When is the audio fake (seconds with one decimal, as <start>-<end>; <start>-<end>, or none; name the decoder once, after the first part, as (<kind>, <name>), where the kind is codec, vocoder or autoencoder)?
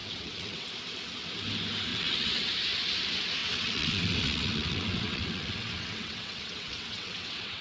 0.0-0.7 (vocoder, WaveNeXt); 1.9-2.5; 3.4-7.6